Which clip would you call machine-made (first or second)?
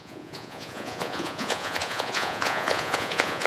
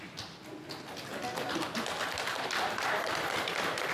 first